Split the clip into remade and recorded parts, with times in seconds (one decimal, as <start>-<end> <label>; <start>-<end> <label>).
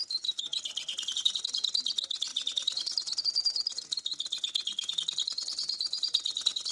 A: 0.0-0.5 remade; 0.5-2.3 recorded; 2.3-3.2 remade; 3.2-6.7 recorded